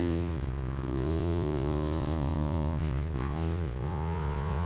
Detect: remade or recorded remade